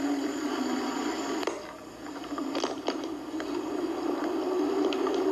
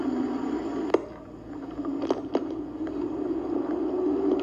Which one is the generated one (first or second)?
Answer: first